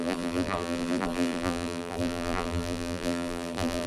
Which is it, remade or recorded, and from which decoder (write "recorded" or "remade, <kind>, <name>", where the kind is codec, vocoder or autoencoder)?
remade, vocoder, BigVGAN v2